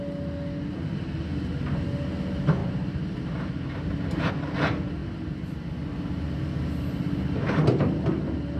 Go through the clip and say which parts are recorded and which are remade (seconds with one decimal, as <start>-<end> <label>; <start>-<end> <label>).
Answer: 0.0-2.6 recorded; 2.6-4.3 remade; 4.3-5.0 recorded; 5.0-5.5 remade; 5.5-8.6 recorded